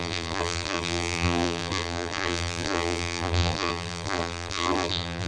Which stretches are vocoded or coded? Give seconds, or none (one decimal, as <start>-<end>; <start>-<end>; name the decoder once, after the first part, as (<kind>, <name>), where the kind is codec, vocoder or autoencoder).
0.0-5.3 (vocoder, BigVGAN v2)